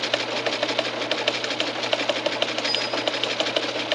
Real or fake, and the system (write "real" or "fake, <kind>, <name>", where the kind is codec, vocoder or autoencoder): real